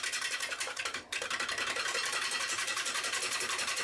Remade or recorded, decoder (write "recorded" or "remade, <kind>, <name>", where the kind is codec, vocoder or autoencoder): remade, vocoder, BigVGAN v2